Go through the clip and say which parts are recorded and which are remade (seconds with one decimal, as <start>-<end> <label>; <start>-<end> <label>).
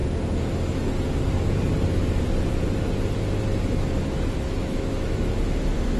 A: 0.0-3.6 recorded; 3.6-6.0 remade